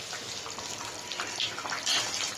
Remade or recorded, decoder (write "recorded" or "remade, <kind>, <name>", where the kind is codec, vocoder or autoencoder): recorded